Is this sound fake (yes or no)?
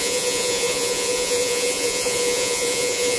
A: yes